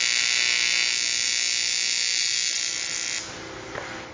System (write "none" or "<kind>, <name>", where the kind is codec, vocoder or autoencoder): none